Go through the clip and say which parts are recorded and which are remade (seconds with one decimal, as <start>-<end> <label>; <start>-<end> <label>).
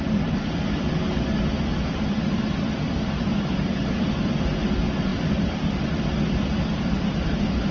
0.0-7.7 recorded